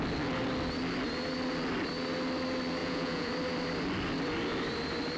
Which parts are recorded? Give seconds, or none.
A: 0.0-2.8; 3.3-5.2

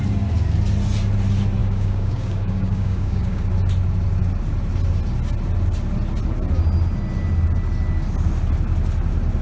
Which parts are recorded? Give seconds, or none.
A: 0.0-1.6; 3.5-9.4

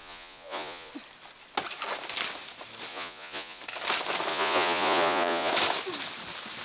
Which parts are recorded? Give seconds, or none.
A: 0.9-2.9; 3.6-4.3; 5.5-6.6

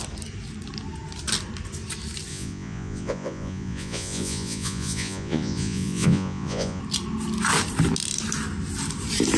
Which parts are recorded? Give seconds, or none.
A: 0.0-2.3; 6.8-9.4